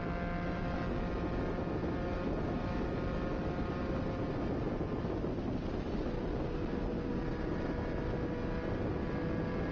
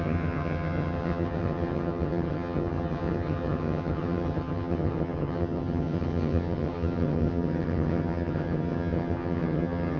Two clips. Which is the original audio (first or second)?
first